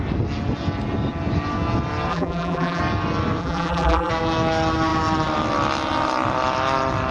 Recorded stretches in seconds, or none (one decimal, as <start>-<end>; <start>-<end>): 0.0-2.1; 2.8-3.4; 4.1-7.1